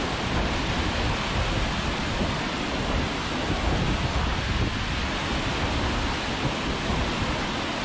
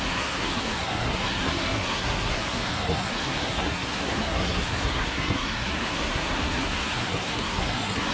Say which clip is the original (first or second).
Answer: first